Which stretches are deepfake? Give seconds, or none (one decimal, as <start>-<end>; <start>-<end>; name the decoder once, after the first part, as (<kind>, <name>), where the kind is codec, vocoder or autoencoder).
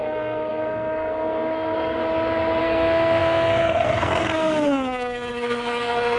0.0-2.0 (codec, SNAC); 2.6-6.2